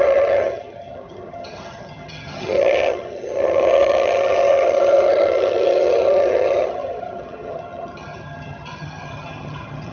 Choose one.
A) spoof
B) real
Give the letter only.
A